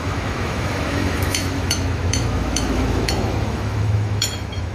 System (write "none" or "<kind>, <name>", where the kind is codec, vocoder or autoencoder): autoencoder, DAC-VAE